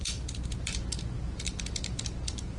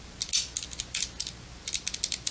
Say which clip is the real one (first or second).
second